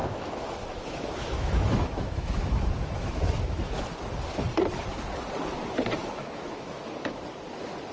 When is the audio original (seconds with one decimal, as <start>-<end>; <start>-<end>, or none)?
3.8-6.0; 7.2-7.9